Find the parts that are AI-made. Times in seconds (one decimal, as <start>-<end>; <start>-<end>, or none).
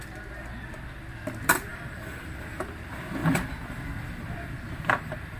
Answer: 1.7-2.7; 3.2-5.4